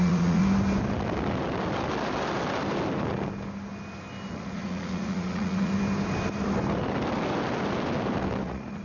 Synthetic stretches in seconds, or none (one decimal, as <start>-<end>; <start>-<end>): 0.0-0.4; 4.3-5.7; 8.4-8.8